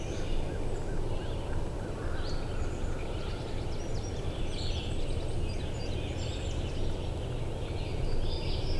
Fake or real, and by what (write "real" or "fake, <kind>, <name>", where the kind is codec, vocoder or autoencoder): real